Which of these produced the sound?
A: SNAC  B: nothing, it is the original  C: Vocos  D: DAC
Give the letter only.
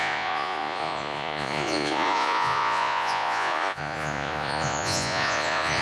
C